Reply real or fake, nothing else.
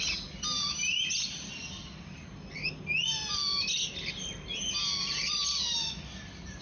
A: real